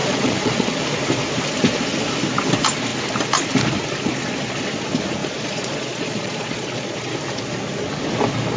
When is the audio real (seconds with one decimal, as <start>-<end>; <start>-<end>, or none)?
0.8-5.2; 6.9-8.6